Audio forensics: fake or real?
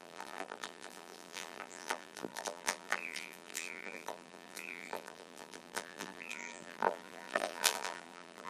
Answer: fake